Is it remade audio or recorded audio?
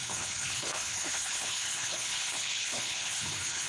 remade